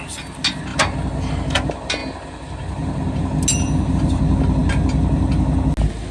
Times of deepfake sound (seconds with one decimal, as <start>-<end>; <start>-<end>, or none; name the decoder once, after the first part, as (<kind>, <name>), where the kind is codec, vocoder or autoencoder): none